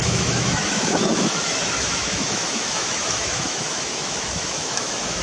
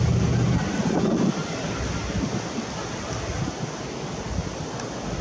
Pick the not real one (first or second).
first